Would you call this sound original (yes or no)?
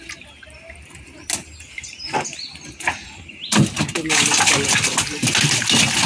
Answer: yes